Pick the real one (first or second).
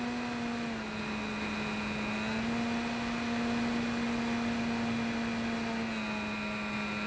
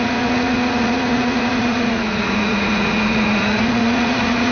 first